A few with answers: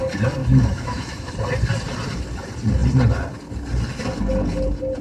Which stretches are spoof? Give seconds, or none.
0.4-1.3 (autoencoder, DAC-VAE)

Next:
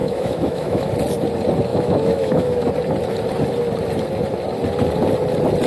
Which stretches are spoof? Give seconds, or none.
0.0-0.9 (autoencoder, DAC-VAE); 1.7-2.7

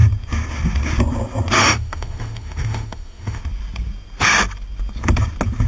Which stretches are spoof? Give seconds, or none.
1.6-3.4 (autoencoder, DAC-VAE)

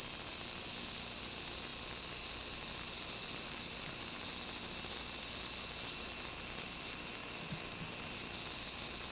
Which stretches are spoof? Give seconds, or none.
none

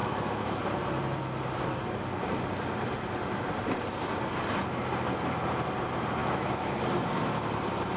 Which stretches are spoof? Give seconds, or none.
0.0-0.6 (autoencoder, DAC-VAE); 6.2-6.8

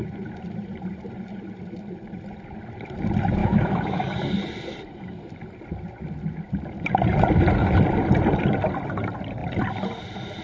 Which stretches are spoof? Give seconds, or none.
3.4-4.0 (autoencoder, DAC-VAE)